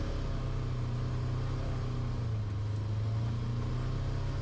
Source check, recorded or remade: recorded